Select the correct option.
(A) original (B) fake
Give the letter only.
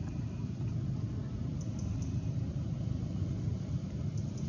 A